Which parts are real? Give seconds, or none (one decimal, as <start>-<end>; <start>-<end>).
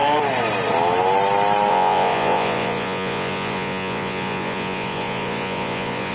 0.0-1.7